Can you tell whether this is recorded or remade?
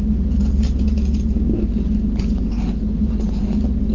recorded